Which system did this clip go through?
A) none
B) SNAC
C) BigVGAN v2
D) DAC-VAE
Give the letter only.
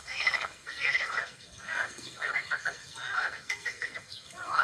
B